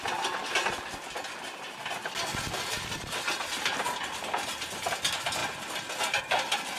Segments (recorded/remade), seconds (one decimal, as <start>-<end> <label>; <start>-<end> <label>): 0.0-6.8 recorded

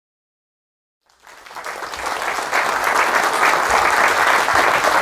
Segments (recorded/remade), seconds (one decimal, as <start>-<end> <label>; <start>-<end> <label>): 0.0-5.0 recorded

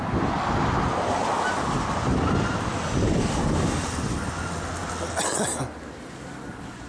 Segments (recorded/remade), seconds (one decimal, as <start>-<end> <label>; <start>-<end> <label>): 0.0-6.9 recorded